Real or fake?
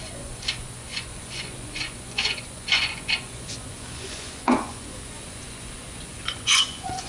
fake